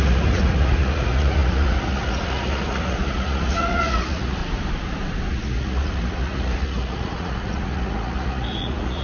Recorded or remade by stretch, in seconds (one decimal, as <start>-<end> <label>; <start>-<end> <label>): 0.0-4.4 remade; 4.4-5.3 recorded; 5.3-9.0 remade